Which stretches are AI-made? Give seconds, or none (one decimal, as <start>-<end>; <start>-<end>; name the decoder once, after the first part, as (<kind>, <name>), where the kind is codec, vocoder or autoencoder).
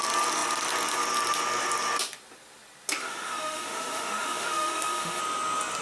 3.0-5.2 (autoencoder, DAC-VAE)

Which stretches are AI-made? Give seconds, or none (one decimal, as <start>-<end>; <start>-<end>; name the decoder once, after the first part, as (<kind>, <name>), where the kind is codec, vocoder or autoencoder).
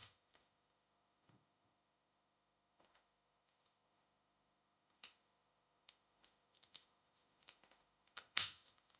0.0-9.0 (autoencoder, DAC-VAE)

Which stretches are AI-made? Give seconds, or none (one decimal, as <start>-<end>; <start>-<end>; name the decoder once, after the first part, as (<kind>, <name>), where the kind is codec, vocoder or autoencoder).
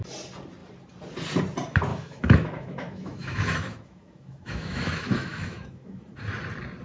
1.9-6.0 (autoencoder, DAC-VAE)